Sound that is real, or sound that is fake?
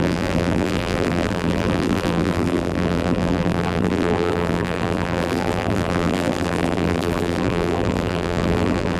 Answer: fake